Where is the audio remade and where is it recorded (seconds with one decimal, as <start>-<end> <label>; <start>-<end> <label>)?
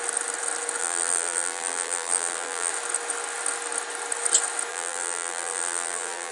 0.0-0.8 recorded; 0.8-2.7 remade; 2.7-4.7 recorded; 4.7-6.3 remade